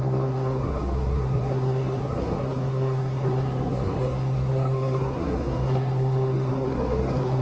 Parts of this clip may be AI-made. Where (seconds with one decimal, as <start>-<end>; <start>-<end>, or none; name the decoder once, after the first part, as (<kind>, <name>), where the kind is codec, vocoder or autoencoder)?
0.0-7.4 (codec, SNAC)